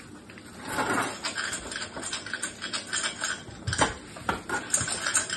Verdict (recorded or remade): recorded